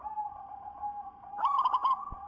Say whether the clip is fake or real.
real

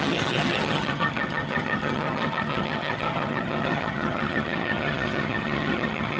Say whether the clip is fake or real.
fake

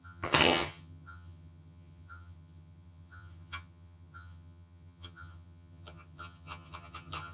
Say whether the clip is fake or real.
fake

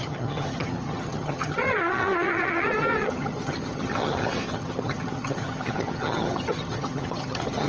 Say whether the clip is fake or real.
fake